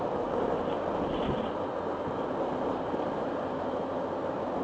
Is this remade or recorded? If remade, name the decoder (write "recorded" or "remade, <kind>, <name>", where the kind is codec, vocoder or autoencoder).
recorded